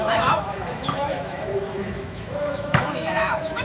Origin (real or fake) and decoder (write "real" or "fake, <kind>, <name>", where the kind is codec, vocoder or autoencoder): fake, autoencoder, DAC-VAE